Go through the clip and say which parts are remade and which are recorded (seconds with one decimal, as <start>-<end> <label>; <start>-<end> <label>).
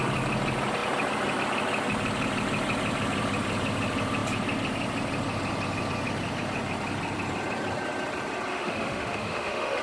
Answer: 0.0-8.5 recorded; 8.5-9.8 remade